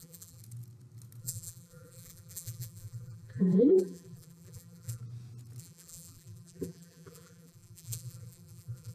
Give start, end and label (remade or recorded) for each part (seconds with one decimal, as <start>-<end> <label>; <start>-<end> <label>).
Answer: 0.0-0.4 remade; 0.4-1.2 recorded; 1.2-5.0 remade; 5.0-5.6 recorded; 5.6-8.9 remade